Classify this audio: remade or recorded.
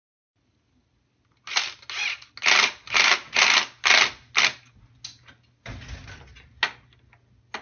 recorded